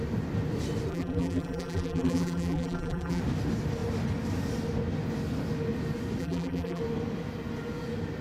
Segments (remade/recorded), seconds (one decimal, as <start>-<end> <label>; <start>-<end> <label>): 0.0-0.9 recorded; 0.9-3.2 remade; 3.2-6.2 recorded; 6.2-6.8 remade; 6.8-8.2 recorded